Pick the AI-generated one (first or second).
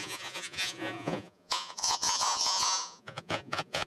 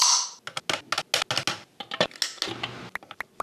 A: first